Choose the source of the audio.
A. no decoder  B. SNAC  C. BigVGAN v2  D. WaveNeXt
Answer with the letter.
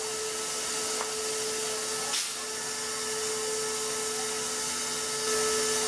A